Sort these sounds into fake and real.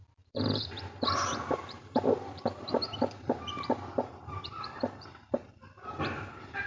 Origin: fake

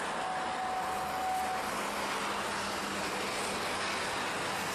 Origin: real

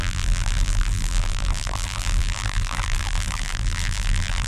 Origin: fake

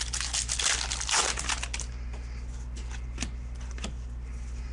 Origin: real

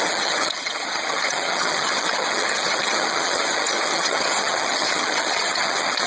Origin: fake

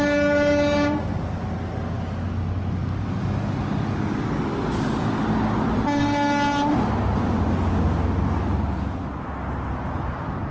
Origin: real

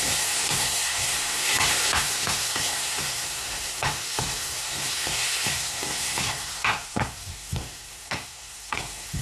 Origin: fake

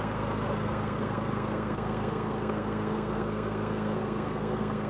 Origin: fake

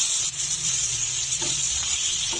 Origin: fake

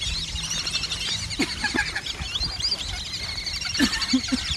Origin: real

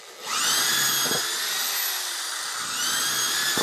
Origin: real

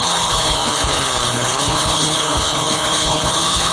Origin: fake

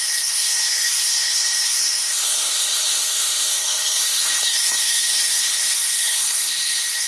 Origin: fake